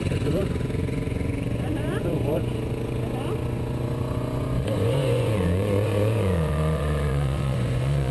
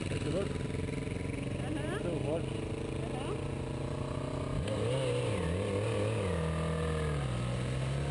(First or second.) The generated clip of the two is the first